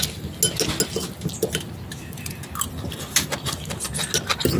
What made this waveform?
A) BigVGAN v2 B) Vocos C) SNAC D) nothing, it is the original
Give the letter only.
D